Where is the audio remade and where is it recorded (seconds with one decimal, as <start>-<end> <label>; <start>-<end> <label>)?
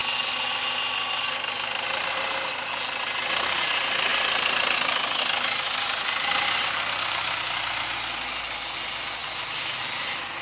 0.0-10.4 recorded